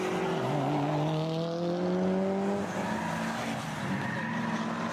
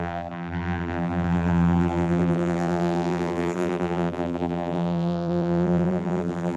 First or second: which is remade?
second